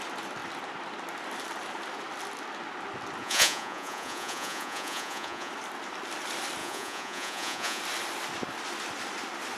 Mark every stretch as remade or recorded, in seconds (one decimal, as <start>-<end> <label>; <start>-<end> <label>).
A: 0.0-3.2 recorded; 3.2-5.5 remade; 5.5-6.6 recorded; 6.6-7.8 remade; 7.8-9.6 recorded

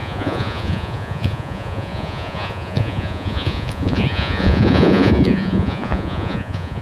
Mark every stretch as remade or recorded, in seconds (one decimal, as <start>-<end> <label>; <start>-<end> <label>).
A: 0.0-6.8 remade

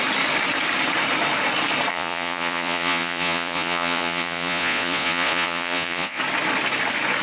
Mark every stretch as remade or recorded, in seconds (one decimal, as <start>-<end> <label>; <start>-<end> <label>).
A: 0.0-1.9 recorded; 1.9-6.2 remade; 6.2-7.2 recorded

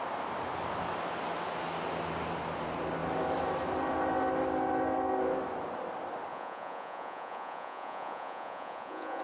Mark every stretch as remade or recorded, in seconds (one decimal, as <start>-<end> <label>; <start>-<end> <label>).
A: 0.0-6.3 recorded; 6.3-9.2 remade

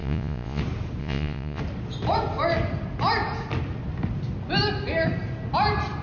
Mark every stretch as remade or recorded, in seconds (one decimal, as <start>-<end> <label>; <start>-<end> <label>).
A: 0.0-0.6 remade; 0.6-1.0 recorded; 1.0-1.6 remade; 1.6-6.0 recorded

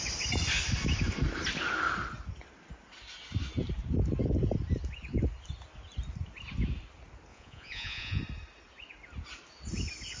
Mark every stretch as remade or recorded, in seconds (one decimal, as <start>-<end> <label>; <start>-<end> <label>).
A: 0.0-7.3 recorded; 7.3-8.2 remade; 8.2-10.2 recorded